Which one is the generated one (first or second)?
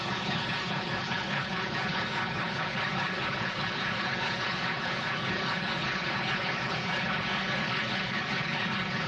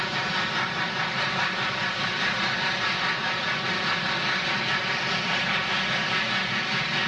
first